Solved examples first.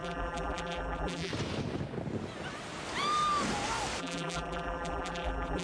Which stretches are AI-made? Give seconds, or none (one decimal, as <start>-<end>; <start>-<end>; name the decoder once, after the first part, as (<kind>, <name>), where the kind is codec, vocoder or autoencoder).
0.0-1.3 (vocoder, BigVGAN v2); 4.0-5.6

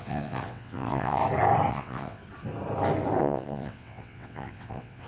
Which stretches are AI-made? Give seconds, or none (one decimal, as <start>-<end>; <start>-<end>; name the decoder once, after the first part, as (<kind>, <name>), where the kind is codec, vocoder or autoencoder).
0.0-1.2 (vocoder, WaveNeXt); 1.7-2.2; 3.2-5.1

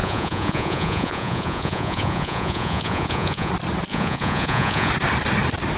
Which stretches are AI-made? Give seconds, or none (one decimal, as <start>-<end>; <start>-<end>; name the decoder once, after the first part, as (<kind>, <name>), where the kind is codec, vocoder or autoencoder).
0.0-3.5 (vocoder, Vocos); 3.9-4.9

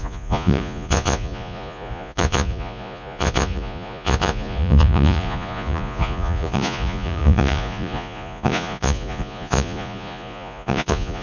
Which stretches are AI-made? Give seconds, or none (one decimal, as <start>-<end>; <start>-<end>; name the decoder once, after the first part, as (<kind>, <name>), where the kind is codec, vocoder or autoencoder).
0.0-11.2 (vocoder, Vocos)

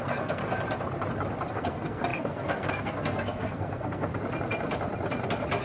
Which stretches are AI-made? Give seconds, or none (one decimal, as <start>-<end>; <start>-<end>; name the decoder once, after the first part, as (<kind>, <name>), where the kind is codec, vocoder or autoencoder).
0.0-0.4 (codec, SNAC); 1.5-4.1

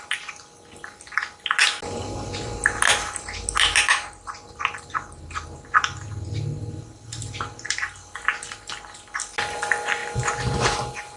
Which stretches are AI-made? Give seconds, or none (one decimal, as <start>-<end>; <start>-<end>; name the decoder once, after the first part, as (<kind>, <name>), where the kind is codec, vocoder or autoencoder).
none